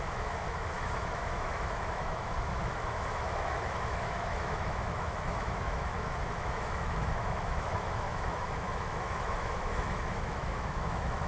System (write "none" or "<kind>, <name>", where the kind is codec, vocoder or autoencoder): autoencoder, DAC-VAE